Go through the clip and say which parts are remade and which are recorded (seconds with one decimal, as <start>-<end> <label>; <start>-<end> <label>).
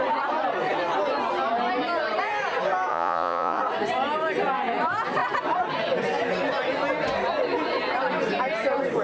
0.0-2.9 recorded; 2.9-3.6 remade; 3.6-9.0 recorded